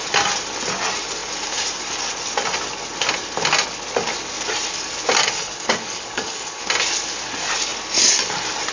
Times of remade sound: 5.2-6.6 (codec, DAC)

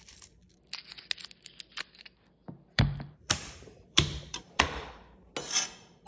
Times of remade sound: 2.4-5.3 (vocoder, BigVGAN v2)

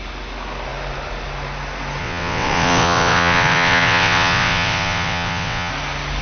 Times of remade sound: 2.0-5.7 (vocoder, WaveNeXt)

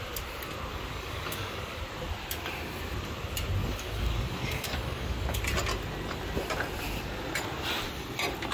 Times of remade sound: 0.7-1.8 (codec, DAC); 3.6-5.4